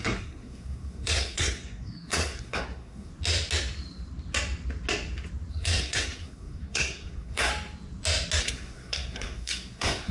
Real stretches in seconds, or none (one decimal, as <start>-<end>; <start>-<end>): 3.1-5.5; 7.5-8.4